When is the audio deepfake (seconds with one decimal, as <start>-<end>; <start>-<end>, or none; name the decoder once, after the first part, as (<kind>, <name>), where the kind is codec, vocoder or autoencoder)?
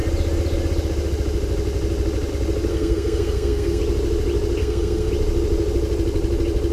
2.7-3.8 (codec, SNAC); 4.6-5.1